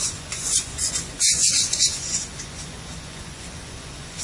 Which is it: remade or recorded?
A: remade